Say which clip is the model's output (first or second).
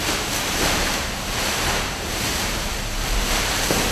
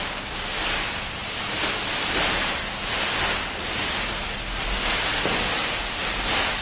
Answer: first